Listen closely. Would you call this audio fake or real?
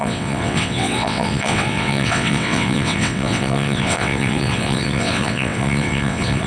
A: fake